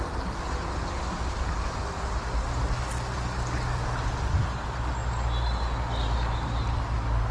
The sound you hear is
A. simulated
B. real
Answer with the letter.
B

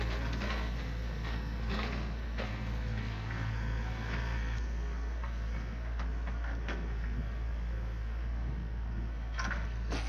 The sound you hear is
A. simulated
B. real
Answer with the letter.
A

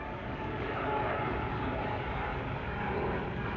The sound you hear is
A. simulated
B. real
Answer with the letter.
A